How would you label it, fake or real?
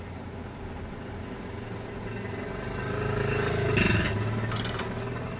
real